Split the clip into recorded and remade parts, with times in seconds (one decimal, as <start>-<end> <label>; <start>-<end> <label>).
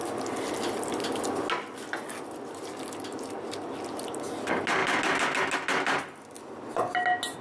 0.0-7.4 recorded